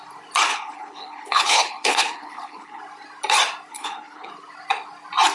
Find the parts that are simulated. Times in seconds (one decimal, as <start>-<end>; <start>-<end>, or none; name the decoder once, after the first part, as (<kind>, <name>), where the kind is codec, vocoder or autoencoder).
0.5-2.8 (codec, HILCodec); 3.7-4.3